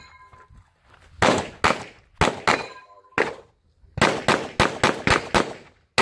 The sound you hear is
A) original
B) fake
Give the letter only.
A